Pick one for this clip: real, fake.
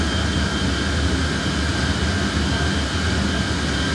real